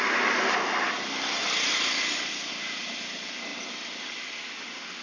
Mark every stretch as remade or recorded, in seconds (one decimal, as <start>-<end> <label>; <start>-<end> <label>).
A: 0.0-5.0 recorded